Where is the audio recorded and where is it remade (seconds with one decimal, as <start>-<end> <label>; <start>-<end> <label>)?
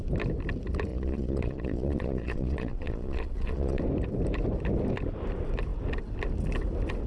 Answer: 0.0-0.9 recorded; 0.9-3.8 remade; 3.8-7.1 recorded